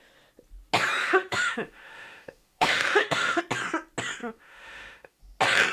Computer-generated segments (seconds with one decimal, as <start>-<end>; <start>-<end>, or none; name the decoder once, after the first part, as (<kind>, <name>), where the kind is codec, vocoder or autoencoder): 1.0-3.4 (autoencoder, DAC-VAE); 4.2-5.2